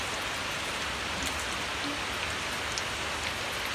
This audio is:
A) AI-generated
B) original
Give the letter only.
B